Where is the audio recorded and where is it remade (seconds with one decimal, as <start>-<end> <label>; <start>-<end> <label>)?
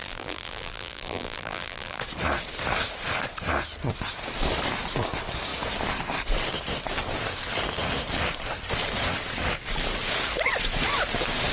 0.0-2.0 remade; 2.0-11.5 recorded